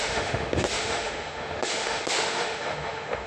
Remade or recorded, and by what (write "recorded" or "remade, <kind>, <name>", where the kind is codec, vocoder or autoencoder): remade, autoencoder, DAC-VAE